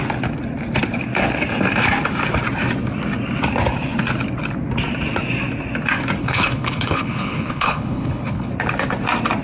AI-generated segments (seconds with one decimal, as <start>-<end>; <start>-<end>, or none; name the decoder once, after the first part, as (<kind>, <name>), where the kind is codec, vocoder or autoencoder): 6.2-8.5 (codec, HILCodec)